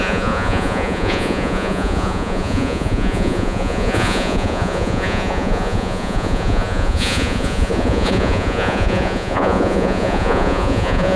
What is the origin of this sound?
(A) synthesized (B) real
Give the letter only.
A